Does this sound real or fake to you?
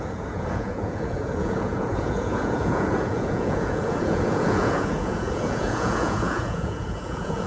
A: fake